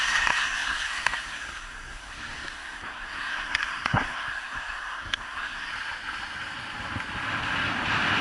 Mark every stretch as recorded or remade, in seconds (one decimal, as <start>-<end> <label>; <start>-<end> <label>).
0.0-5.7 remade; 5.7-8.2 recorded

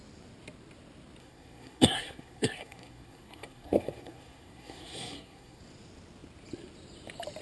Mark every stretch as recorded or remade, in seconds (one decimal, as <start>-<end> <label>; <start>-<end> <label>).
0.0-1.2 recorded; 1.2-5.6 remade; 5.6-7.4 recorded

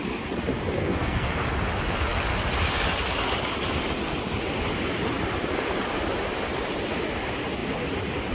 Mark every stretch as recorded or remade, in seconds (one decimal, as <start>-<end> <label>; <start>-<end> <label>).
0.0-0.8 recorded; 0.8-1.3 remade; 1.3-8.3 recorded